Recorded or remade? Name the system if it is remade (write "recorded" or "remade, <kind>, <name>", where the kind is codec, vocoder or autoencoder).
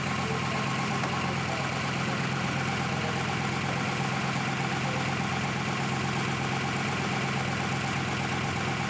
recorded